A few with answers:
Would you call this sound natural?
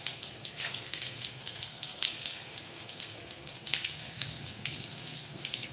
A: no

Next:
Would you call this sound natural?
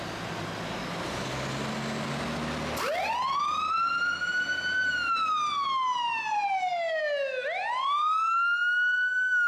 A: yes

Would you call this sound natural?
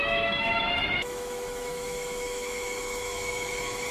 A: no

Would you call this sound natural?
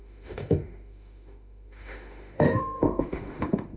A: no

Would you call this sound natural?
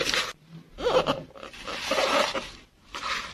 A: yes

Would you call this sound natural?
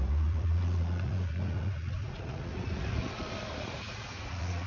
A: no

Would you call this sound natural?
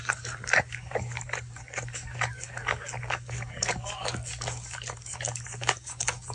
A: no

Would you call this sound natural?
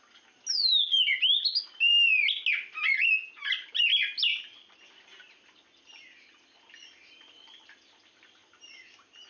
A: yes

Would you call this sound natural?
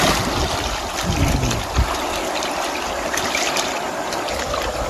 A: yes